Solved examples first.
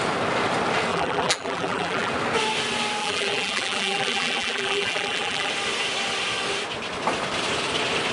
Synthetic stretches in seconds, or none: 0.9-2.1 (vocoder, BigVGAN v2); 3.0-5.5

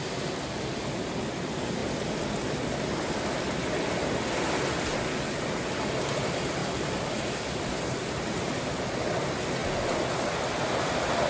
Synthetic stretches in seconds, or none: 6.6-8.1 (vocoder, BigVGAN v2)

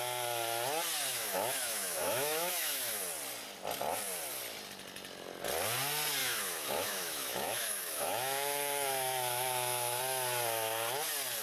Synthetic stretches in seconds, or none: 1.1-3.0 (autoencoder, DAC-VAE); 6.2-10.0

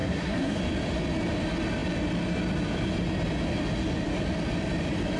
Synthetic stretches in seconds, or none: 0.0-0.6 (codec, SNAC)

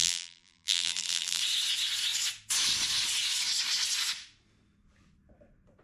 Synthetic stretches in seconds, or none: 0.0-1.4 (vocoder, BigVGAN v2)

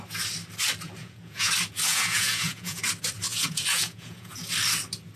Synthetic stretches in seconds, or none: 1.0-1.5 (vocoder, Vocos); 1.9-2.8; 3.3-4.4

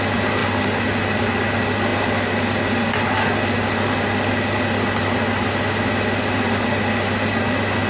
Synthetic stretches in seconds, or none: none

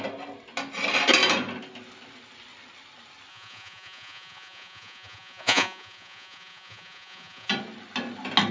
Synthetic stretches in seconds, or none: 3.3-7.5 (vocoder, Vocos)